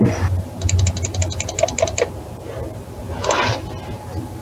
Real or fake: real